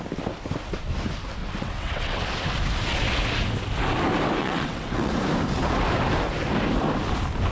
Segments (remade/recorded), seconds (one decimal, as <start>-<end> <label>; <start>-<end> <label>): 0.0-1.4 recorded; 1.4-2.2 remade; 2.2-4.4 recorded; 4.4-5.1 remade; 5.1-7.5 recorded